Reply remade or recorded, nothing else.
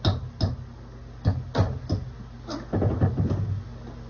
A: recorded